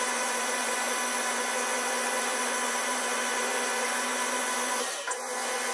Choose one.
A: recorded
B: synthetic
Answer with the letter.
B